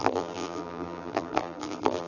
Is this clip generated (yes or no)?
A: yes